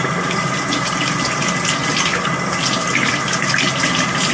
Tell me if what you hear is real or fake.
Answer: real